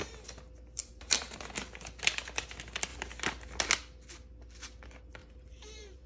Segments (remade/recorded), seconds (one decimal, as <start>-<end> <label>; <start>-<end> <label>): 0.0-0.8 recorded; 0.8-1.4 remade; 1.4-5.2 recorded; 5.2-6.1 remade